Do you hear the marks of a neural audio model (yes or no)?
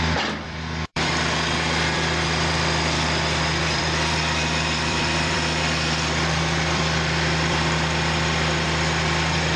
yes